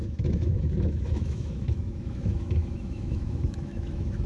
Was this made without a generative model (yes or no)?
no